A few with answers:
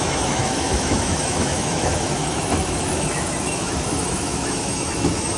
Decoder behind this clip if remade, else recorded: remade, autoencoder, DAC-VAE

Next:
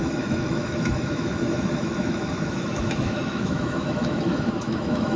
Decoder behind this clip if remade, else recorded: remade, autoencoder, DAC-VAE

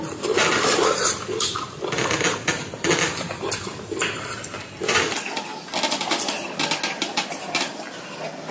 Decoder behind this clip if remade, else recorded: recorded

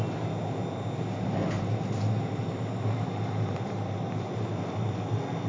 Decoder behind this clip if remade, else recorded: recorded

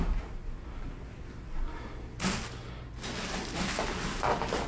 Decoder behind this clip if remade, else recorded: recorded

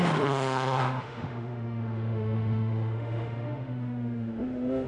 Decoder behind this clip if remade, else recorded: remade, autoencoder, DAC-VAE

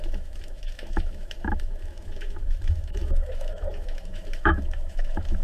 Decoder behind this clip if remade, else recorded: remade, autoencoder, DAC-VAE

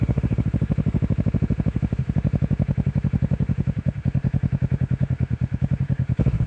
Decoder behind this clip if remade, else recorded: remade, autoencoder, DAC-VAE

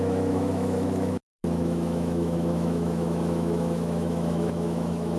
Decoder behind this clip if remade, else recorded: remade, autoencoder, DAC-VAE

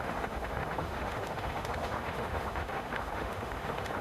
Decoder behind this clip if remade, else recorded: remade, autoencoder, DAC-VAE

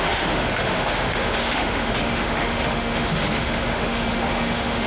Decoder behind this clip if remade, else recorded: remade, autoencoder, DAC-VAE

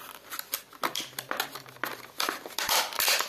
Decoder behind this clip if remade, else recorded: recorded